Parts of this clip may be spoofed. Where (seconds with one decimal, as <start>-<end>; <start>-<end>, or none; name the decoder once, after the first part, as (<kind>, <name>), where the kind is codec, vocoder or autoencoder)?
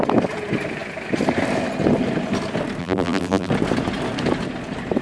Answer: 2.8-3.5 (vocoder, BigVGAN v2)